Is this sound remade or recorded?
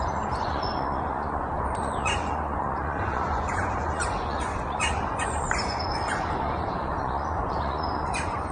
remade